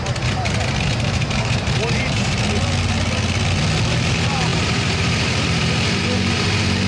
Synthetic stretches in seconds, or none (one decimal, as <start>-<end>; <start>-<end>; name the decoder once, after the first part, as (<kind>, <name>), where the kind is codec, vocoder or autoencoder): 0.9-2.4 (vocoder, BigVGAN v2); 4.5-6.9